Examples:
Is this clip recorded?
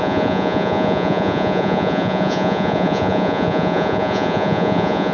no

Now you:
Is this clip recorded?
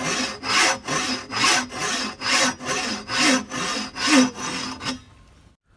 yes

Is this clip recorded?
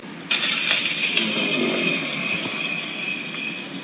yes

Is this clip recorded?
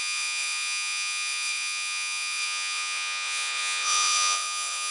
no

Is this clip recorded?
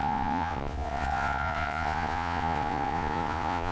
no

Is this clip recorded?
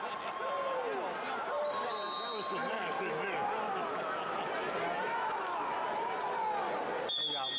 yes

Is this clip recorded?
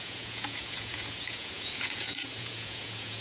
no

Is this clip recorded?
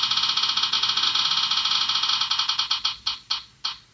yes